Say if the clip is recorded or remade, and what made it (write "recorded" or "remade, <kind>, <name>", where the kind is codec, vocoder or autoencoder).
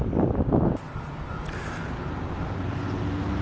recorded